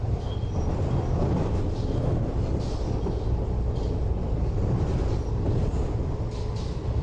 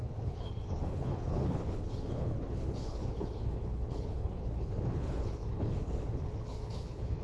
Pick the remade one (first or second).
second